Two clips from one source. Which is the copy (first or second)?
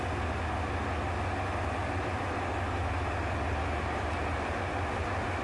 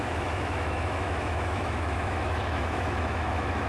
second